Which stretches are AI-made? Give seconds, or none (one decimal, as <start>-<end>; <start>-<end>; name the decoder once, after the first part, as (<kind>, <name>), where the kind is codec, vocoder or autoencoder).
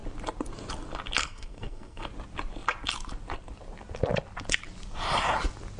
1.2-2.1 (codec, SNAC)